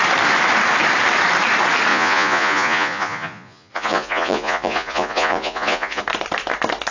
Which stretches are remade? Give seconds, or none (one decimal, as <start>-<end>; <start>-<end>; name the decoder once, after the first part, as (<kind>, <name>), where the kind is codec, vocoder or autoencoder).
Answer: 1.9-6.0 (vocoder, Vocos)